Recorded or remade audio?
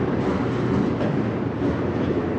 recorded